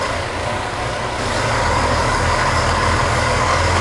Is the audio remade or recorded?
remade